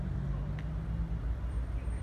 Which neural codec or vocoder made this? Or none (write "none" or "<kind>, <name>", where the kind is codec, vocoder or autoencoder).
none